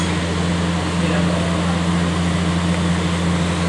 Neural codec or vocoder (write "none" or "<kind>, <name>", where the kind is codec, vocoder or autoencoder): none